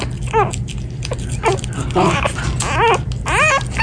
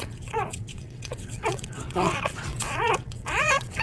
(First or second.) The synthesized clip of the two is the second